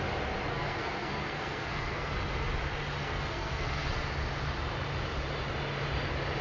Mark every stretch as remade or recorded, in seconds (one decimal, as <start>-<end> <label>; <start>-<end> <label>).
0.0-0.5 recorded; 0.5-2.1 remade; 2.1-3.0 recorded; 3.0-3.9 remade; 3.9-6.4 recorded